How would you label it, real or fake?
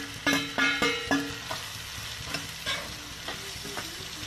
fake